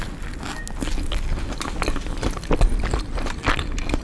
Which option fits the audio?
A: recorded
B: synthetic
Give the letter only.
A